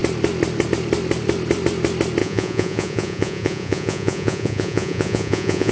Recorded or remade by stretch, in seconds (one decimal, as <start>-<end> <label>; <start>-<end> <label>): 0.0-2.2 recorded; 2.2-5.7 remade